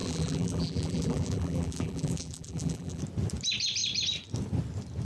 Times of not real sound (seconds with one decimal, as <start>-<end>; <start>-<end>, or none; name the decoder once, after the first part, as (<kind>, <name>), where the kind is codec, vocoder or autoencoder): 0.0-3.0 (vocoder, BigVGAN v2)